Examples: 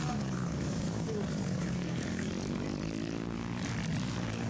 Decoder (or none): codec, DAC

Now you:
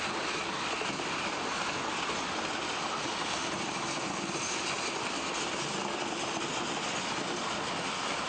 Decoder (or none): none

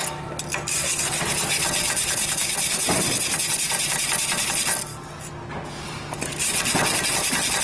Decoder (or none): none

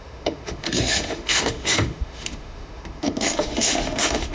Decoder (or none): autoencoder, DAC-VAE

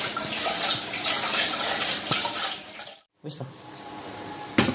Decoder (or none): vocoder, BigVGAN v2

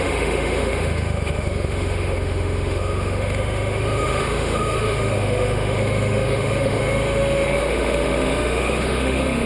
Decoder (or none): autoencoder, DAC-VAE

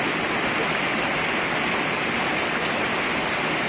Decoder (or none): none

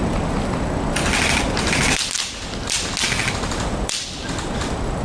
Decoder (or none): none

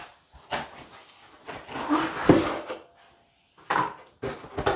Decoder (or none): none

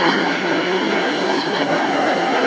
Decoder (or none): codec, SNAC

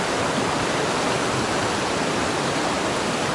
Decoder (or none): none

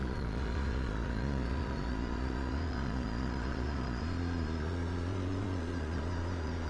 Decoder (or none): vocoder, Vocos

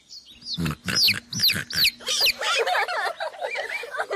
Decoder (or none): none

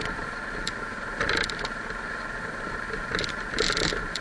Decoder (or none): none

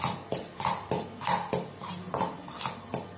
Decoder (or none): none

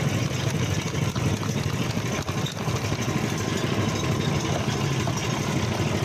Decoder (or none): none